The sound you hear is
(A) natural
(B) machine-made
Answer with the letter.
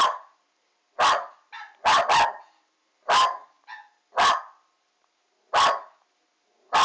A